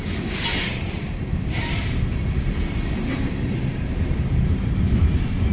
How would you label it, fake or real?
fake